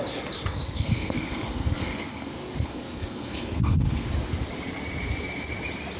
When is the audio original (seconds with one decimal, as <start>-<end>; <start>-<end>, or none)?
0.0-0.5; 4.1-6.0